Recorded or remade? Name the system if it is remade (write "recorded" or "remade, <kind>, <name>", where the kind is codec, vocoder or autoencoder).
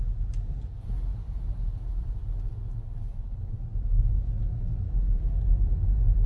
recorded